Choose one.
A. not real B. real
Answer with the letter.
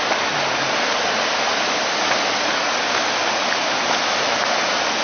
B